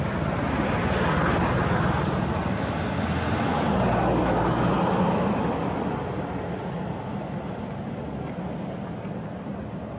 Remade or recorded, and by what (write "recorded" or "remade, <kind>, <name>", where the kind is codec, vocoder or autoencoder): recorded